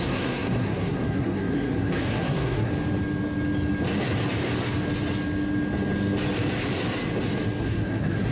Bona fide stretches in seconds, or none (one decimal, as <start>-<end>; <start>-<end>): 2.7-7.6